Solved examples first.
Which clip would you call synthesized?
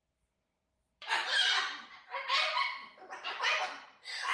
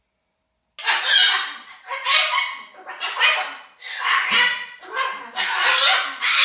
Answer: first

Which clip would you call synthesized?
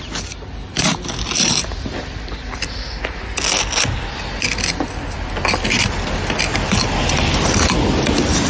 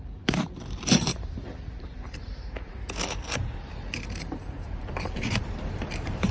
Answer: second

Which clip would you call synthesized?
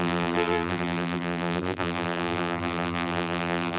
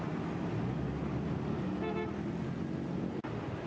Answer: first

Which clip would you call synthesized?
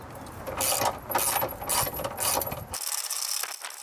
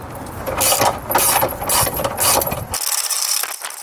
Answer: second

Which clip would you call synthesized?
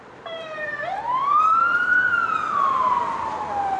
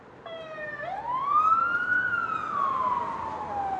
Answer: first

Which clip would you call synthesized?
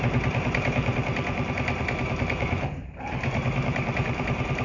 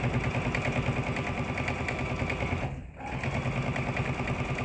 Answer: first